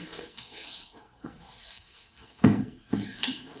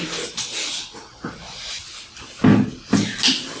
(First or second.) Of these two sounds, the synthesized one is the first